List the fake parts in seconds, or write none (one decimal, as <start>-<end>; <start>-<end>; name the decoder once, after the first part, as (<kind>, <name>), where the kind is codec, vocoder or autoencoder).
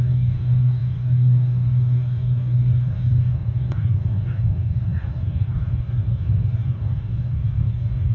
0.0-8.1 (codec, DAC)